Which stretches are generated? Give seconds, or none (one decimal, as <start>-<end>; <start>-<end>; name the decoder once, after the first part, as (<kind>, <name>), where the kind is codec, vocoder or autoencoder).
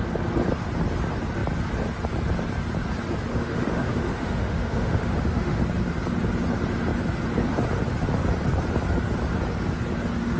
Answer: 3.3-5.6 (autoencoder, DAC-VAE)